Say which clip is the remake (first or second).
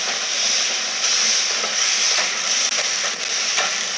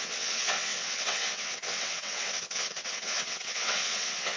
second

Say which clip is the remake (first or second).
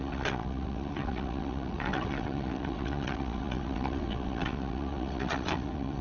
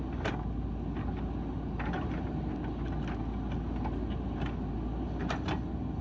first